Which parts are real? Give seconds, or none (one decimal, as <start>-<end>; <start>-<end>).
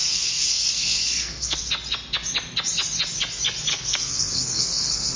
1.7-3.7